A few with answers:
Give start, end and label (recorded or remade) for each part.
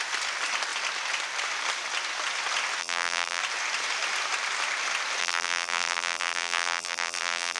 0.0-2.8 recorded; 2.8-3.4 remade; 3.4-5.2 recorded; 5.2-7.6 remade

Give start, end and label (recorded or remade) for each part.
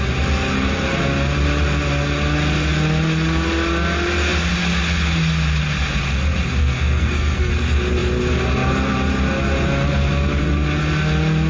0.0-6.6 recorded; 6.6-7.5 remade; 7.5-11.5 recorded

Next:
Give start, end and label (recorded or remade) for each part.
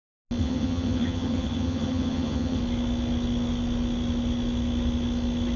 0.0-0.4 recorded; 0.4-2.6 remade; 2.6-5.6 recorded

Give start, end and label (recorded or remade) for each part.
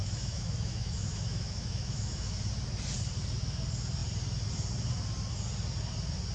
0.0-2.4 remade; 2.4-6.3 recorded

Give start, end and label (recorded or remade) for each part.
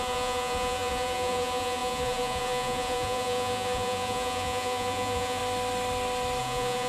0.0-5.4 remade; 5.4-6.4 recorded; 6.4-6.9 remade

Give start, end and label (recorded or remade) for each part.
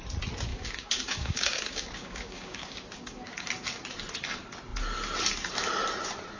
0.0-0.5 recorded; 0.5-3.5 remade; 3.5-6.4 recorded